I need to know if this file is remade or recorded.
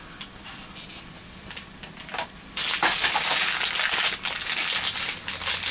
recorded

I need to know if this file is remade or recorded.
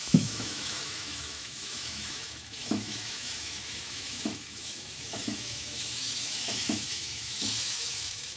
remade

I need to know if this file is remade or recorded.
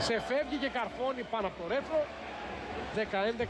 remade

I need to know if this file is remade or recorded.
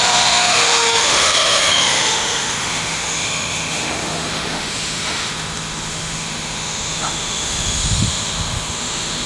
remade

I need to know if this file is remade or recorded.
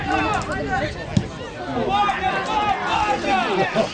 recorded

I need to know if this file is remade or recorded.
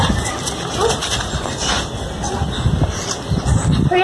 recorded